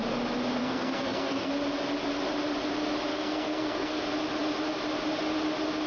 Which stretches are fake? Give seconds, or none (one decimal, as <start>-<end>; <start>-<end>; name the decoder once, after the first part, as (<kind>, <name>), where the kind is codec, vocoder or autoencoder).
0.6-1.5 (codec, SNAC); 3.1-4.0